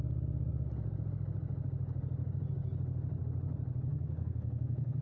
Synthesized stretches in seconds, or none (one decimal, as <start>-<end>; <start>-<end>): 3.9-5.0